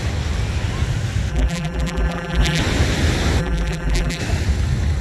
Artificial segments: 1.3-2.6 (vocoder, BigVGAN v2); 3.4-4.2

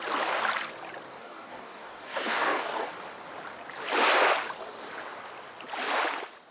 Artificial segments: 1.2-2.9 (codec, DAC)